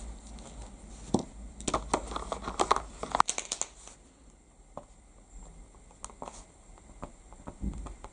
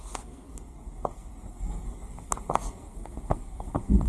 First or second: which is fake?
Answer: second